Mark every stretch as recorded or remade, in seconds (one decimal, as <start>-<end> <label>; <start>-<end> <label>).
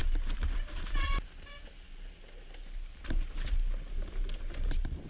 0.0-5.1 recorded